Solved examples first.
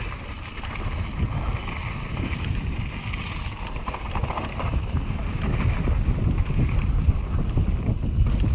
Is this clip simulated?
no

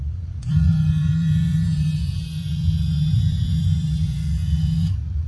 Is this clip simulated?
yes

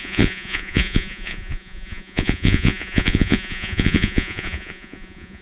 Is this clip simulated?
yes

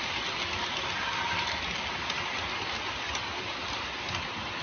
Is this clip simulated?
no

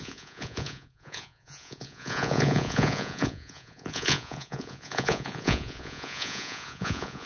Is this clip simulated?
yes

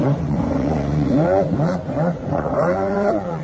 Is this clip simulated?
yes